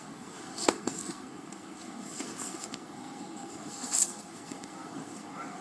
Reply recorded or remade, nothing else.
remade